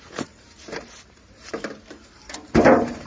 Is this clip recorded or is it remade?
remade